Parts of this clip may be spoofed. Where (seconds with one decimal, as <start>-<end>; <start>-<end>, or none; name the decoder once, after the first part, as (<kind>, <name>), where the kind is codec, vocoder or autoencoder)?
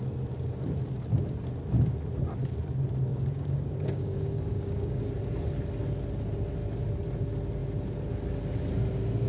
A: 3.1-5.1 (codec, DAC)